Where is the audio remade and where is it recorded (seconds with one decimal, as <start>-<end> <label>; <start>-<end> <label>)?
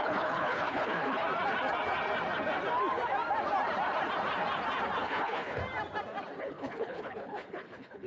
0.0-1.2 remade; 1.2-5.0 recorded; 5.0-5.6 remade; 5.6-6.4 recorded; 6.4-8.1 remade